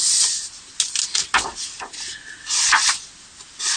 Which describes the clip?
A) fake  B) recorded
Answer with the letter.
B